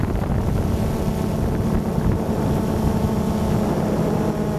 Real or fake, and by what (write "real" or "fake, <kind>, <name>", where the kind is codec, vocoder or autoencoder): real